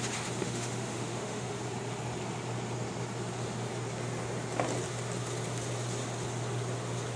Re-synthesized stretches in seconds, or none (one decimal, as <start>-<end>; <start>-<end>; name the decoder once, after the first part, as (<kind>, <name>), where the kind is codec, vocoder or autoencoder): 0.4-1.5 (autoencoder, DAC-VAE)